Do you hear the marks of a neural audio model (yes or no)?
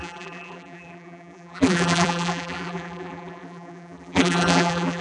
yes